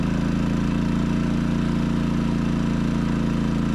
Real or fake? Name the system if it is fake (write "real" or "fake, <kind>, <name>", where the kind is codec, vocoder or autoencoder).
real